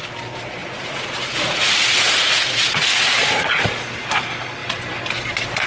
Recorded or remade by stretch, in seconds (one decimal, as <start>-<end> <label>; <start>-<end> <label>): 0.0-0.6 recorded; 0.6-3.8 remade; 3.8-5.7 recorded